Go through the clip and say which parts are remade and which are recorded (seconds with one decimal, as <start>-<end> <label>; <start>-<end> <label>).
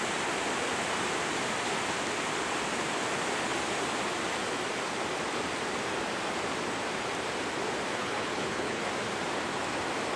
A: 0.0-8.0 recorded; 8.0-8.8 remade; 8.8-10.2 recorded